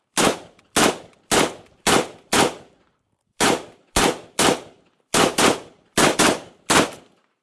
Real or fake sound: fake